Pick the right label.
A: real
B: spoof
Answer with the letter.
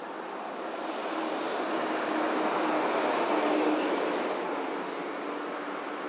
A